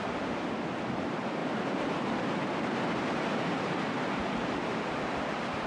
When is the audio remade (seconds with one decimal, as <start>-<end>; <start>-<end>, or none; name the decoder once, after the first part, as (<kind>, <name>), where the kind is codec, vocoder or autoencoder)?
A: 1.4-4.8 (vocoder, BigVGAN v2)